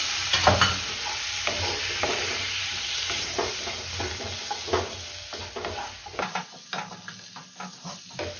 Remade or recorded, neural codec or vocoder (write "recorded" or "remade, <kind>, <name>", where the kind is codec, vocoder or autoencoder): recorded